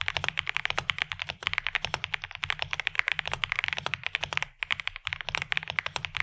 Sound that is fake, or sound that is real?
real